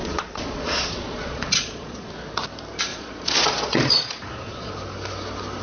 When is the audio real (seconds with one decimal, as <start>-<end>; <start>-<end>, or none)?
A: 2.1-2.9; 4.7-5.6